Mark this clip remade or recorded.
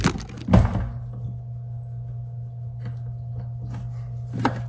recorded